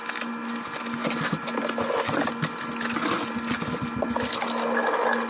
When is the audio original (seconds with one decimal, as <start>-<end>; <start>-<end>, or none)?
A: 0.0-5.3